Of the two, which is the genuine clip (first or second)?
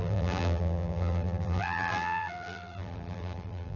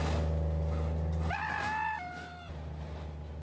second